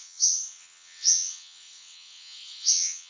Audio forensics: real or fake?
fake